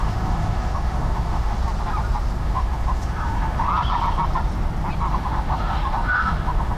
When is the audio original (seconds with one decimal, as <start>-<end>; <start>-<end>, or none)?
1.6-2.4; 3.7-5.1